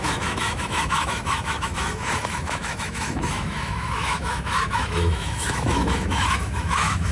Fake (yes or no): yes